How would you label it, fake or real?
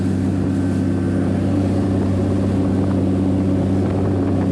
real